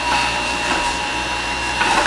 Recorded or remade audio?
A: remade